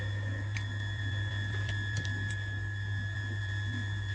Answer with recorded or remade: recorded